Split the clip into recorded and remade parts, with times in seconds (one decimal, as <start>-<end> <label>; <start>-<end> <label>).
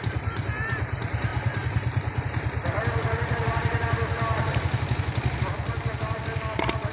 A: 0.0-6.9 recorded